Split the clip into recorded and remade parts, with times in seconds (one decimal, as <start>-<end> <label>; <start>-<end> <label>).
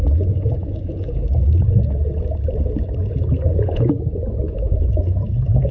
0.0-1.3 remade; 1.3-3.1 recorded; 3.1-5.7 remade